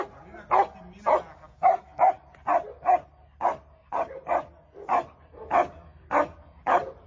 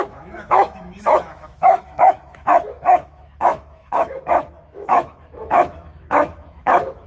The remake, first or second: second